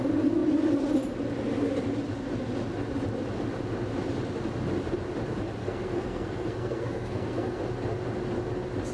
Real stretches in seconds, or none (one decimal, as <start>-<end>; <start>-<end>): 0.0-5.6; 7.6-8.9